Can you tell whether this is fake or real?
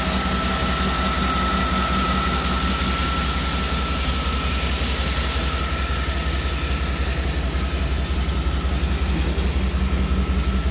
real